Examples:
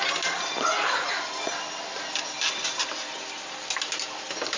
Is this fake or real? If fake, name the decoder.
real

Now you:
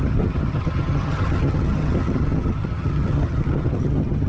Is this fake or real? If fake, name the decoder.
fake, vocoder, HiFi-GAN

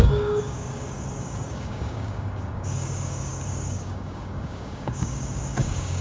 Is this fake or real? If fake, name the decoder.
fake, codec, DAC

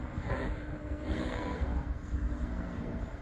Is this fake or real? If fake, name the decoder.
fake, codec, SNAC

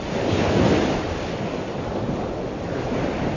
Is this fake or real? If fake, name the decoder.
real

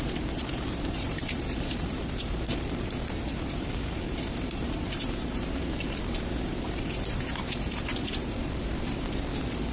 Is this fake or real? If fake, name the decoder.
fake, vocoder, BigVGAN v2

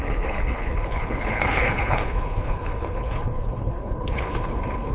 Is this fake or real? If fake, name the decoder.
fake, codec, HILCodec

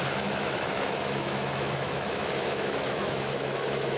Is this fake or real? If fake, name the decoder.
fake, autoencoder, DAC-VAE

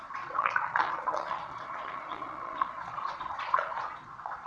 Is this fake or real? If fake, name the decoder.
fake, vocoder, Vocos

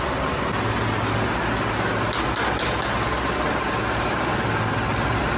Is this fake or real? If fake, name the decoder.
real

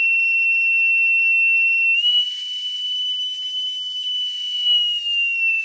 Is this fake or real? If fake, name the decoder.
fake, autoencoder, DAC-VAE